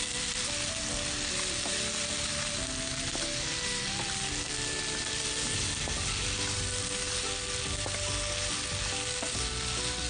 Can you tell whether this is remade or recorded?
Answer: recorded